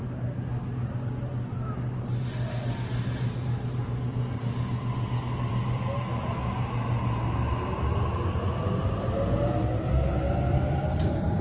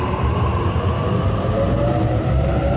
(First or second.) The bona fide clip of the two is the first